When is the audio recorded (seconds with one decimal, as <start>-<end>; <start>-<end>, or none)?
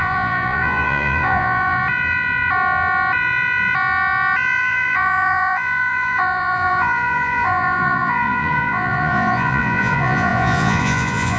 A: 1.8-4.6